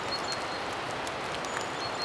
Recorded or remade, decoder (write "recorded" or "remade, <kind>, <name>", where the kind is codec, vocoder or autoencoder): recorded